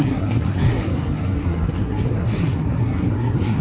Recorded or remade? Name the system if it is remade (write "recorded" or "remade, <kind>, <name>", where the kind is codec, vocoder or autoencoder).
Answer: remade, codec, SNAC